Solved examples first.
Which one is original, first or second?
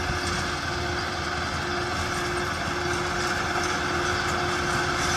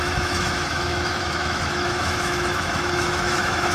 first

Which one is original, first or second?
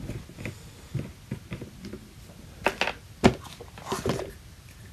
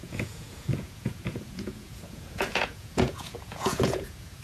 first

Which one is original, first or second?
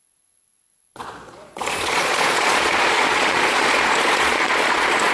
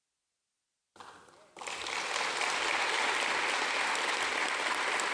second